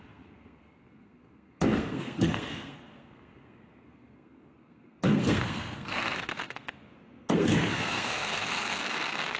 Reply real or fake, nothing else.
fake